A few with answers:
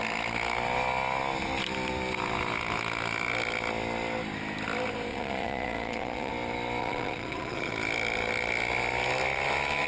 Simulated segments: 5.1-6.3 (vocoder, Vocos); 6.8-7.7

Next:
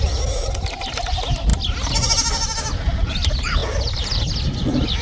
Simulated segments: none